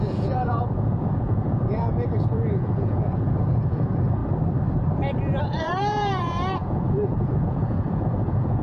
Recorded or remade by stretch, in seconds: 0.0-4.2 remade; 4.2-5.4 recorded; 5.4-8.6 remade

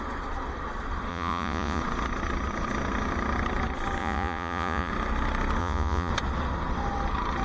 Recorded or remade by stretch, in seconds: 0.0-1.1 recorded; 1.1-1.8 remade; 1.8-4.0 recorded; 4.0-4.9 remade; 4.9-5.6 recorded; 5.6-6.1 remade; 6.1-7.4 recorded

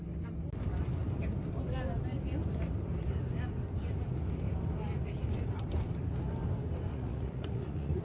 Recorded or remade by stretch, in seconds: 0.0-6.9 recorded; 6.9-8.0 remade